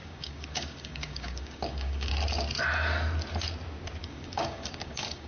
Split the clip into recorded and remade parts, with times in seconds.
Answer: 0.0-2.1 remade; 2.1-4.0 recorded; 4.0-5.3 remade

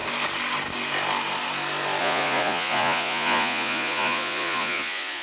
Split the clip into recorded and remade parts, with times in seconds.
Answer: 0.0-2.0 recorded; 2.0-5.2 remade

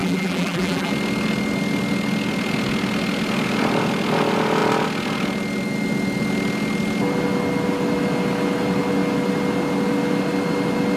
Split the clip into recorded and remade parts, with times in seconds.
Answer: 0.0-0.9 remade; 0.9-11.0 recorded

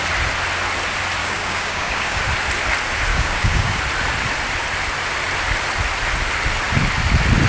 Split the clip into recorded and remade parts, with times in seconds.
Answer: 0.0-1.2 recorded; 1.2-2.2 remade; 2.2-3.1 recorded; 3.1-3.8 remade; 3.8-7.5 recorded

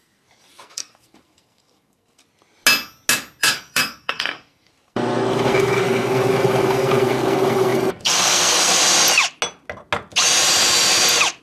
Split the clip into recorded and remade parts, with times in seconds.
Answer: 0.0-2.2 remade; 2.2-3.4 recorded; 3.4-8.8 remade; 8.8-11.4 recorded

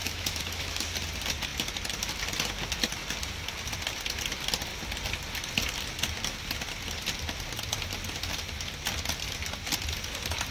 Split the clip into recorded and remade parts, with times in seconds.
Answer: 0.0-0.8 remade; 0.8-10.5 recorded